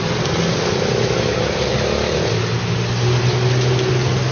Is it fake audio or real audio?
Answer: real